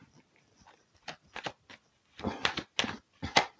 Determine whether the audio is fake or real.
real